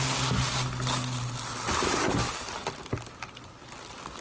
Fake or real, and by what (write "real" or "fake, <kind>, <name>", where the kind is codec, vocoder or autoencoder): real